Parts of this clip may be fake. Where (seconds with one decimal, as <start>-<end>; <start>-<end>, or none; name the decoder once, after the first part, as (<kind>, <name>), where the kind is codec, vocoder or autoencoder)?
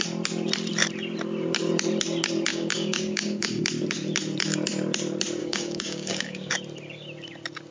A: 2.5-3.6 (codec, DAC); 5.4-6.5